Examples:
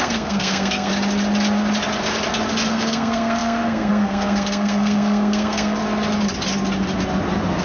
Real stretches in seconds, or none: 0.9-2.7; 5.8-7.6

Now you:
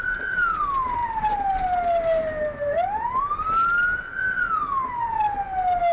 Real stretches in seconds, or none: 0.0-5.9

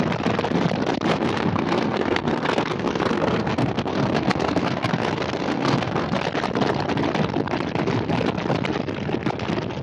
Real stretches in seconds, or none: 0.0-1.1; 6.1-9.8